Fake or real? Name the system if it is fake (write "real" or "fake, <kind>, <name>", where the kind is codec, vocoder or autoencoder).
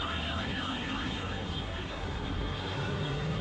fake, codec, SNAC